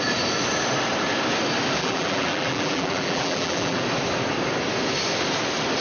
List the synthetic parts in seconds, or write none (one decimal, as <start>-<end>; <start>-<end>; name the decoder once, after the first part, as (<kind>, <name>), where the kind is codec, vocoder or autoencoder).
1.8-3.8 (vocoder, BigVGAN v2)